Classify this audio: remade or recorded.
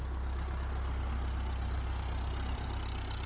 recorded